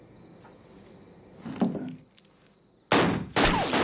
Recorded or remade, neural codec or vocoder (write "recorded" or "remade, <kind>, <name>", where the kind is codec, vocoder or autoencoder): recorded